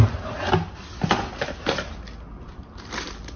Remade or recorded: recorded